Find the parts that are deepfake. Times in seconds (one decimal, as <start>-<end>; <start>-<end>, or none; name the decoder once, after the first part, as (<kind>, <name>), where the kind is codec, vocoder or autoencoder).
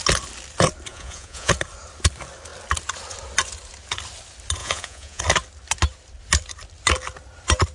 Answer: 0.9-1.5 (vocoder, Vocos); 4.6-5.2